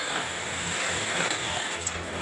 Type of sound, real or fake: fake